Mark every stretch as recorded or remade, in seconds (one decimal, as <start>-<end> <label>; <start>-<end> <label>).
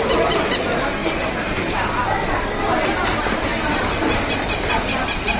0.0-5.4 recorded